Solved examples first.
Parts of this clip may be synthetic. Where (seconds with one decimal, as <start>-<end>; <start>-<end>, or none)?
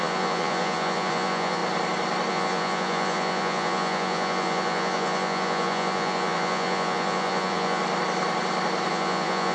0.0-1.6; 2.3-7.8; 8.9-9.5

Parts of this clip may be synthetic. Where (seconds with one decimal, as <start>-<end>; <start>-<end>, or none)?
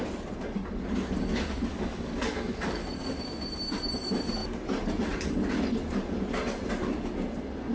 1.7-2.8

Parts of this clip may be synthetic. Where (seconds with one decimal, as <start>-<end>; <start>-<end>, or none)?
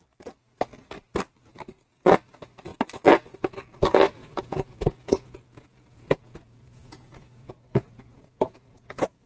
4.2-9.3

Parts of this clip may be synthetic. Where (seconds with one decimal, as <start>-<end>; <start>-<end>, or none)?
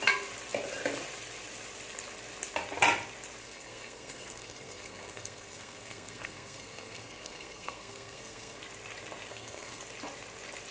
3.4-8.6; 9.3-9.8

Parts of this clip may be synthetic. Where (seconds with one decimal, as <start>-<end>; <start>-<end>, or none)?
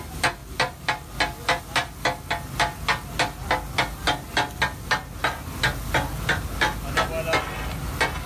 none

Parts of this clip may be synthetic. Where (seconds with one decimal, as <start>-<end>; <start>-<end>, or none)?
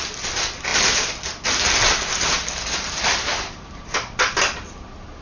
none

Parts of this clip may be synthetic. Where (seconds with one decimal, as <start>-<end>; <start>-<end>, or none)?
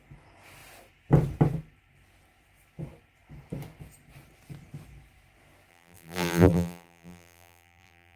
5.7-8.2